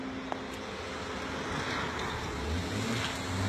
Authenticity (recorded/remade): recorded